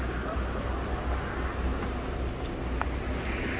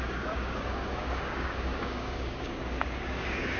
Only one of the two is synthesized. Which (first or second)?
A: second